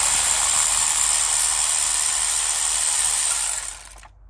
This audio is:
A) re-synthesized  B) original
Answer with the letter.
B